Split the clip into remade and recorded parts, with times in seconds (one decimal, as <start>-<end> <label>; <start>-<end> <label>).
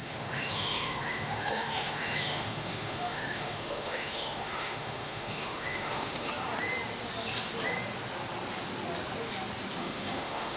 0.0-6.3 remade; 6.3-9.8 recorded; 9.8-10.6 remade